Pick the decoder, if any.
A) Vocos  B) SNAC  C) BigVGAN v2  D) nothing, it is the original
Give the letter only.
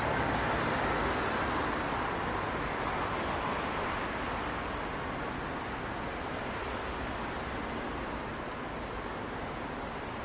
D